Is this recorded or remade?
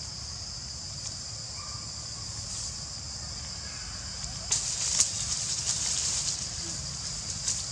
recorded